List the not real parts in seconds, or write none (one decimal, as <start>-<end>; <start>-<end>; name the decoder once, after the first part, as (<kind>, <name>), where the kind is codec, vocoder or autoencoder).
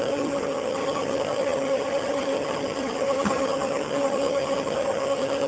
0.0-5.5 (vocoder, HiFi-GAN)